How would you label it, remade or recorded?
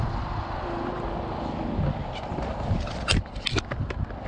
recorded